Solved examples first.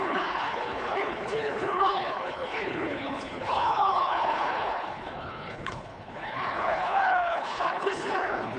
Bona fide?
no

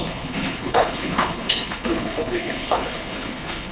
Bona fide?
no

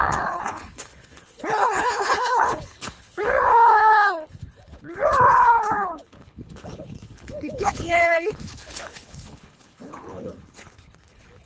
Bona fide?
no